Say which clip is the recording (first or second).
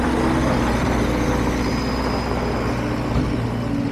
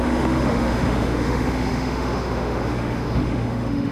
first